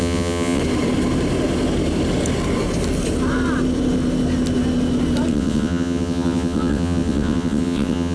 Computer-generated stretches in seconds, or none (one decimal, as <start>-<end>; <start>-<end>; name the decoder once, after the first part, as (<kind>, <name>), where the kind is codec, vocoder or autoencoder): 0.0-0.6 (vocoder, WaveNeXt); 5.3-8.1